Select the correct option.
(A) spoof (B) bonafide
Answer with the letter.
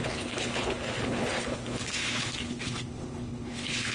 A